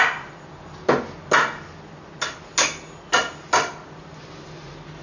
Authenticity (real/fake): real